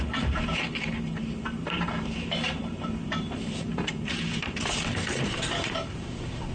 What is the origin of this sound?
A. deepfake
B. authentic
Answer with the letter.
A